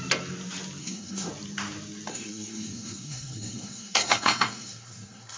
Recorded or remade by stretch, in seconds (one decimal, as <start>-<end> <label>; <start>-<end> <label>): 0.0-0.8 recorded; 0.8-1.3 remade; 1.3-2.1 recorded; 2.1-5.4 remade